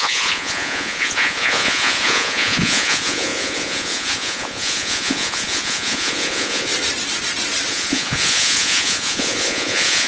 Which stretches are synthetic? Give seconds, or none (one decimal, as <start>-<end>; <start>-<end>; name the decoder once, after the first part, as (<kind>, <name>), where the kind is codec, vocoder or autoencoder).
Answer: 0.0-6.7 (vocoder, Vocos); 7.7-10.1